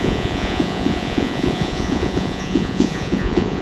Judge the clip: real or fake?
fake